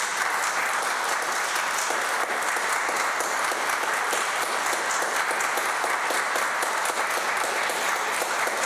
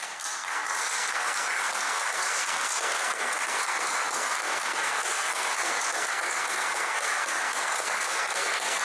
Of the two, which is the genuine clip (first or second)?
first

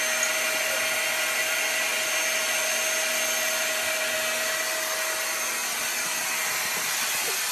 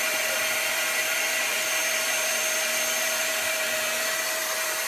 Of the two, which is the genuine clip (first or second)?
first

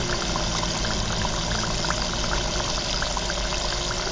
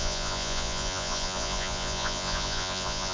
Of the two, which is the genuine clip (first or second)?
first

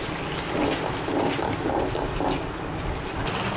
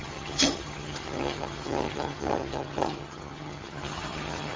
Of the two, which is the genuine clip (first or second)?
first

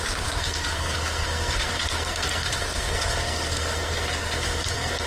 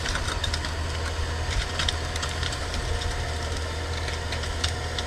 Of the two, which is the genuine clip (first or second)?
second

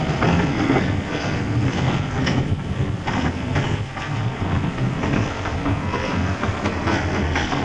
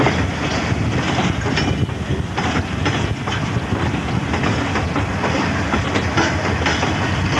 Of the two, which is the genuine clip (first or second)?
second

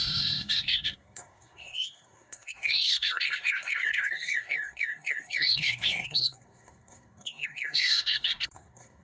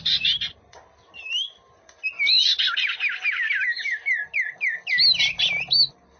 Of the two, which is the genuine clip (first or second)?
second